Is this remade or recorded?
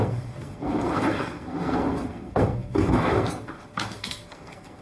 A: remade